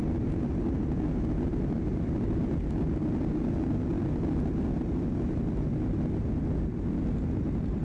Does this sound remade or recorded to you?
recorded